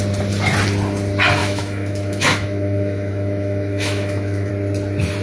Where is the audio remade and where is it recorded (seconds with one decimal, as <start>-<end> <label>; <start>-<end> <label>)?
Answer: 0.0-1.4 recorded; 1.4-4.5 remade; 4.5-5.2 recorded